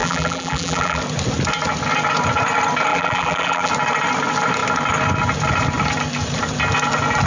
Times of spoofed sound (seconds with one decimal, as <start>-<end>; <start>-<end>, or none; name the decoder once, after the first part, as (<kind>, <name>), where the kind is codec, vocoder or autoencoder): 0.0-1.0 (vocoder, BigVGAN v2); 2.9-3.7

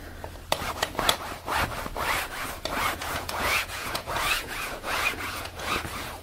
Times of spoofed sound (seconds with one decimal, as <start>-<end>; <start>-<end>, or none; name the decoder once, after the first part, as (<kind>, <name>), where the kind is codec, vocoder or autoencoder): 3.0-5.8 (vocoder, Vocos)

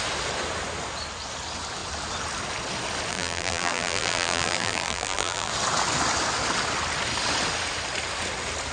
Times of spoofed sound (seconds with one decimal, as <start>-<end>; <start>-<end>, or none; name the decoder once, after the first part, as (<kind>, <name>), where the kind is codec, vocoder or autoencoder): 3.1-5.5 (vocoder, BigVGAN v2)

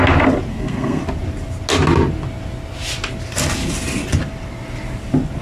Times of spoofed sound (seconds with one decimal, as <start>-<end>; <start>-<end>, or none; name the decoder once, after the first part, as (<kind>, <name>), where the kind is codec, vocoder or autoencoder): 0.5-1.0 (codec, SNAC)

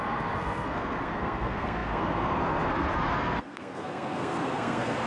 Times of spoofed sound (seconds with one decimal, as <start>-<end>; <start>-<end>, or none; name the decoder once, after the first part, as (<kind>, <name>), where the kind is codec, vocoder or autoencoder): 0.0-5.1 (codec, SNAC)

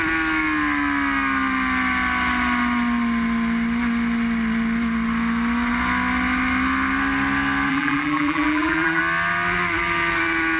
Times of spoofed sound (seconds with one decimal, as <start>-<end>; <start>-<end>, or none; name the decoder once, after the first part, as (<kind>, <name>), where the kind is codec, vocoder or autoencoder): 7.7-9.0 (vocoder, BigVGAN v2)